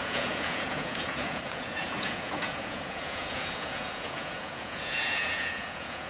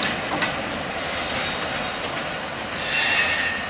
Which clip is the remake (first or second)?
first